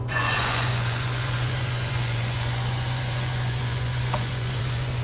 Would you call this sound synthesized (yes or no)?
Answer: yes